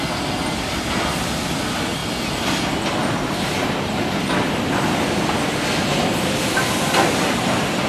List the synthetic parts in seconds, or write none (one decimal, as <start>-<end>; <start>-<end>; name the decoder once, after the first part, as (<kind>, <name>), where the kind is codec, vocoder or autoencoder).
0.0-2.0 (vocoder, BigVGAN v2); 6.1-7.9